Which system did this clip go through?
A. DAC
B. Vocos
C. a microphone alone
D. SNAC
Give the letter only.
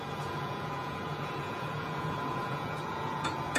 B